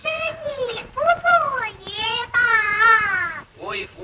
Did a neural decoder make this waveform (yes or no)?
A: yes